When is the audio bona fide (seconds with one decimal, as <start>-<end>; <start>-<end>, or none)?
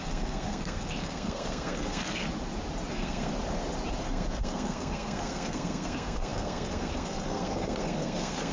2.2-2.9; 3.3-4.0